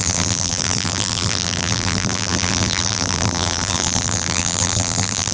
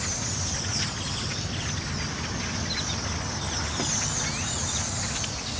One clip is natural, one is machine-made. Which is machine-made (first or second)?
first